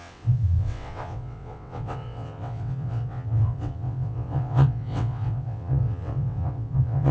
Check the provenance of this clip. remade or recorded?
remade